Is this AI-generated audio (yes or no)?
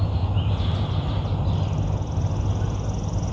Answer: no